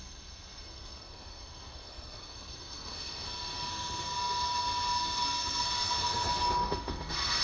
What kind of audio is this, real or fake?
fake